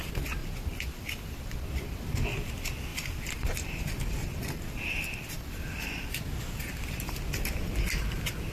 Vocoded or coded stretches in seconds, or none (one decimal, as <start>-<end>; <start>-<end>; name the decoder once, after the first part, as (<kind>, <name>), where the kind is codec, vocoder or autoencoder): 0.4-2.5 (vocoder, BigVGAN v2); 2.9-6.1